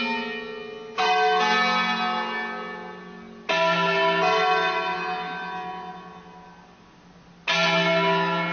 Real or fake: real